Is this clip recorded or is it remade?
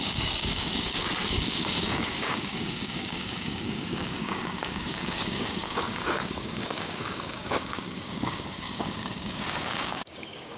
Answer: remade